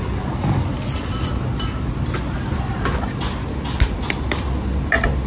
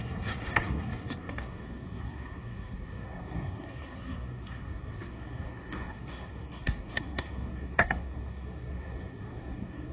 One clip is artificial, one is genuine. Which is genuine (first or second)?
first